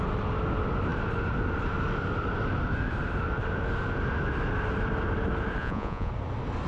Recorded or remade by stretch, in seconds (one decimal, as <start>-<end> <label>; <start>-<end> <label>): 0.0-5.6 recorded; 5.6-6.1 remade; 6.1-6.7 recorded